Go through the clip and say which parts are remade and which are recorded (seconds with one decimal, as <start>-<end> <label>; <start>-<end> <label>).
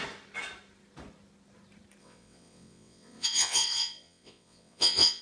0.0-2.0 recorded; 2.0-5.2 remade